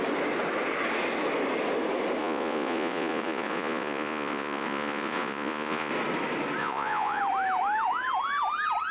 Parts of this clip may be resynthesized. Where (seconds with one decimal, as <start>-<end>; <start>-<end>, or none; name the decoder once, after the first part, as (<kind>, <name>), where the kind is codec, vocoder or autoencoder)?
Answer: 2.2-5.9 (vocoder, Vocos); 6.6-7.2